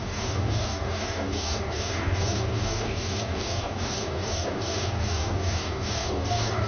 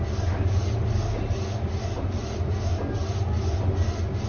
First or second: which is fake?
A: first